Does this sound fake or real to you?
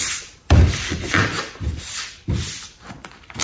fake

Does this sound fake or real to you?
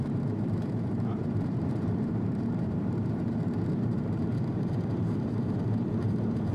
fake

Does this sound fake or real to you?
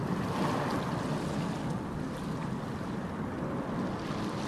real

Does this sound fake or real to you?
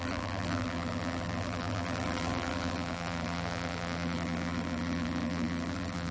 fake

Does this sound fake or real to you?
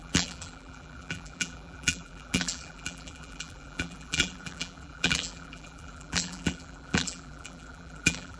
fake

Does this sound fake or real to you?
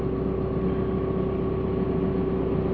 real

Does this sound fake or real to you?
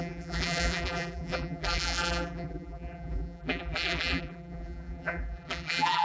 fake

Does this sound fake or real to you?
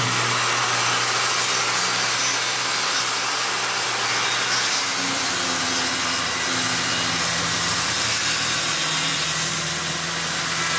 real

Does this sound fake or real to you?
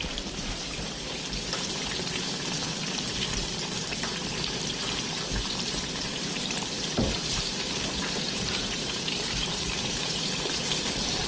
fake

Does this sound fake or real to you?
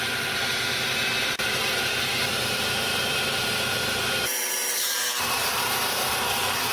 fake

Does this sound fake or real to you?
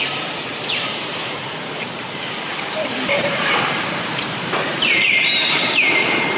fake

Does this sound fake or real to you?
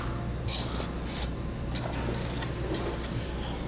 real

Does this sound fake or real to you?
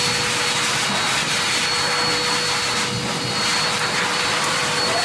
real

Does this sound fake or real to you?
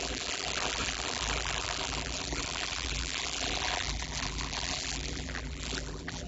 fake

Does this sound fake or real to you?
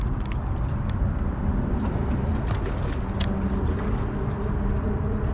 real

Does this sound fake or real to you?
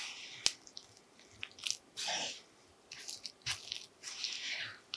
real